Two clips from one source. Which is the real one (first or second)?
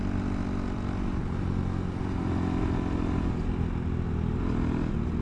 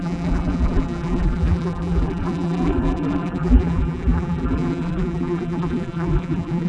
first